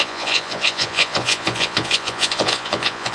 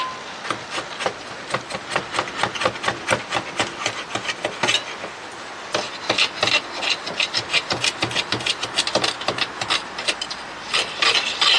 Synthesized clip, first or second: first